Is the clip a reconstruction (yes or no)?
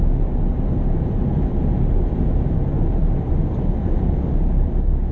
no